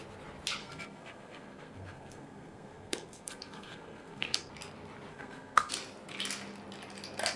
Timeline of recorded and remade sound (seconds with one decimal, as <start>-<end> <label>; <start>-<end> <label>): 0.0-0.6 recorded; 0.6-4.5 remade; 4.5-5.1 recorded; 5.1-5.7 remade; 5.7-7.4 recorded